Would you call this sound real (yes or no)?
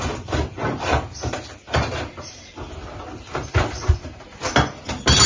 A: yes